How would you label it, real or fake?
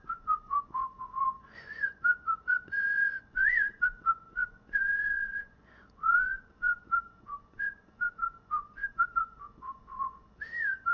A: fake